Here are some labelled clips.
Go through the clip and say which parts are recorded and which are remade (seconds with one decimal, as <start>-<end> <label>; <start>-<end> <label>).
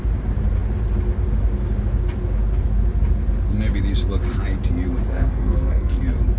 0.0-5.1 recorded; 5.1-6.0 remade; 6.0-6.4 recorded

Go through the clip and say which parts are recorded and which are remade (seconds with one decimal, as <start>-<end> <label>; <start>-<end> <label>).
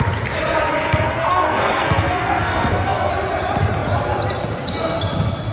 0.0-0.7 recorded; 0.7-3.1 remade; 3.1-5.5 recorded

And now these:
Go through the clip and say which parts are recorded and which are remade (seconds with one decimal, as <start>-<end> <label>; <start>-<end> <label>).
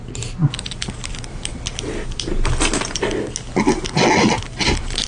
0.0-5.1 recorded